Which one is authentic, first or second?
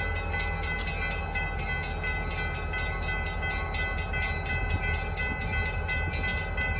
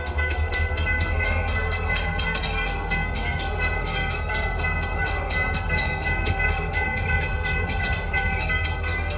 first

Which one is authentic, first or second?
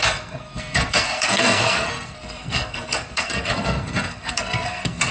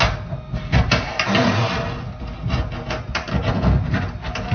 second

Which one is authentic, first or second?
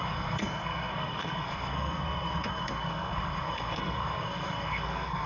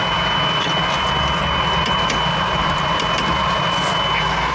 second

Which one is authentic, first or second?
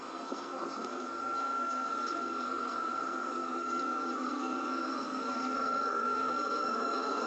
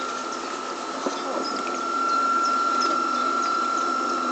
second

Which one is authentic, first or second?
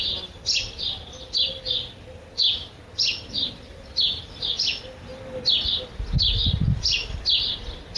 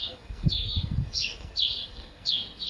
first